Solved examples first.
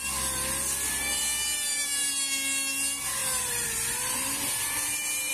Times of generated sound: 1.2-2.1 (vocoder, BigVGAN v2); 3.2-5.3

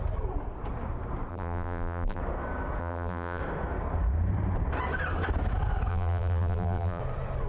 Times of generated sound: 1.3-2.2 (vocoder, BigVGAN v2); 2.8-3.4; 5.9-7.0

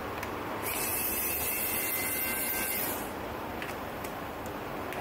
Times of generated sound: 0.9-2.0 (vocoder, BigVGAN v2); 3.5-4.3

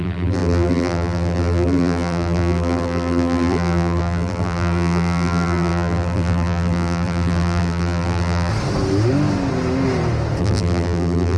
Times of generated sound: 0.0-8.5 (vocoder, BigVGAN v2); 10.4-11.4

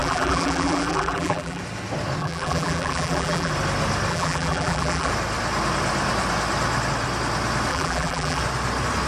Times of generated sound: 0.0-1.6 (vocoder, BigVGAN v2); 2.2-3.5; 4.1-5.1; 7.7-8.4

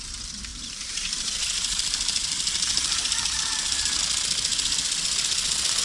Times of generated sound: 0.5-4.0 (vocoder, BigVGAN v2)

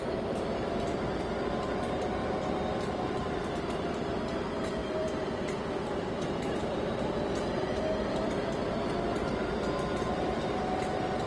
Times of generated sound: 2.2-4.2 (vocoder, BigVGAN v2); 4.8-8.7

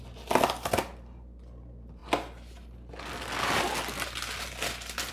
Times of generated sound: none